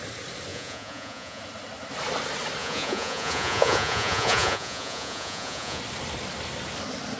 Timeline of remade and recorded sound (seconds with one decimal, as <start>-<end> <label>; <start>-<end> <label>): 0.0-0.5 recorded; 0.5-1.4 remade; 1.4-2.6 recorded; 2.6-5.8 remade; 5.8-7.2 recorded